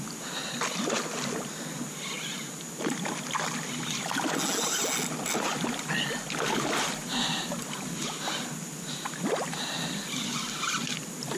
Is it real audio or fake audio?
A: real